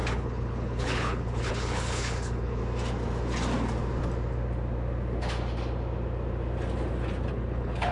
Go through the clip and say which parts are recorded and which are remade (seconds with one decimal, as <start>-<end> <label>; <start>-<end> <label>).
0.0-2.6 remade; 2.6-7.3 recorded; 7.3-7.9 remade